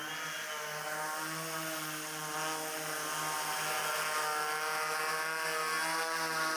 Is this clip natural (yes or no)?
yes